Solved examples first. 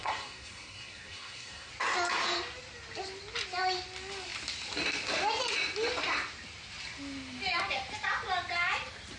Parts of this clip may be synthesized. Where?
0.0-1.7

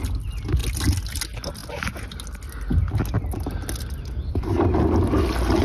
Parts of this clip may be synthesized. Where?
none

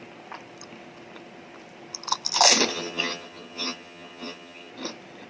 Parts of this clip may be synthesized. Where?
2.7-4.7

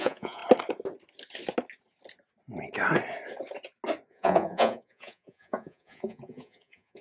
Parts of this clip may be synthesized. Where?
0.0-0.4; 4.1-7.0

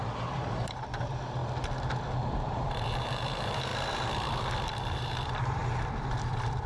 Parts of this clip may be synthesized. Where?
0.0-1.4; 2.4-3.7; 4.8-5.6; 6.2-6.7

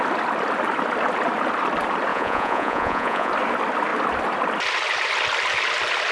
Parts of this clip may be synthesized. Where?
2.1-3.3

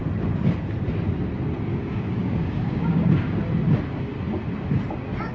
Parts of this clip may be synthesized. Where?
1.7-3.4

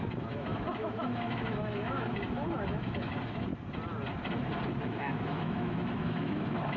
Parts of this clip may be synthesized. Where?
0.0-3.5; 4.8-6.8